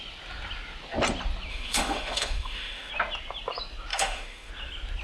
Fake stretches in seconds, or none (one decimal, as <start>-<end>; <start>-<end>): 1.5-2.9; 3.9-4.5